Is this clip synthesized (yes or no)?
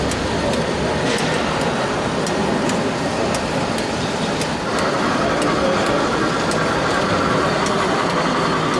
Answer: no